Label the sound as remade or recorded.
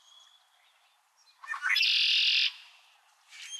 recorded